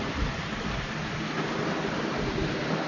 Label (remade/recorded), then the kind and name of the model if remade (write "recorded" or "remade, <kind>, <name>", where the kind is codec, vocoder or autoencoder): recorded